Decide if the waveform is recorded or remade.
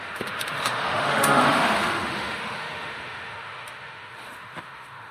remade